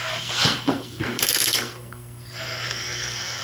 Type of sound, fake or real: fake